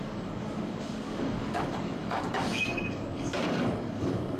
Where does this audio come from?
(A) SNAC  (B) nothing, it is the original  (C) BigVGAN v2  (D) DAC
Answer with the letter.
D